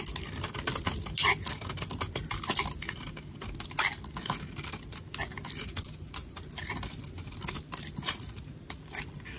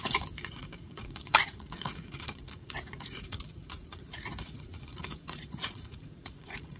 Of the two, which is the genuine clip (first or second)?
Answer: first